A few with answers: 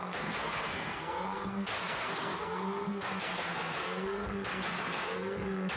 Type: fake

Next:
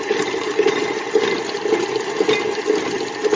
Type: real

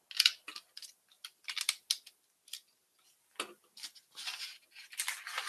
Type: real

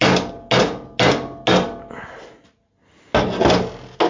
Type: real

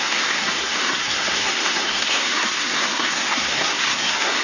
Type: fake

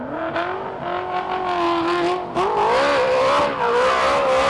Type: real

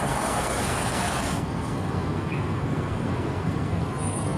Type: fake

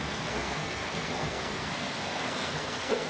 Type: fake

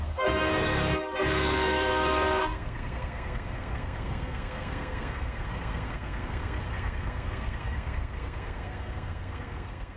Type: fake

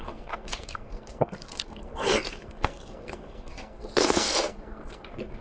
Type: fake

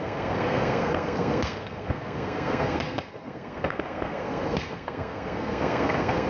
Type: fake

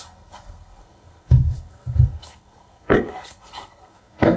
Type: fake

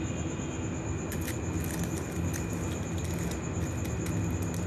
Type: real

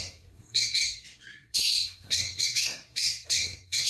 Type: fake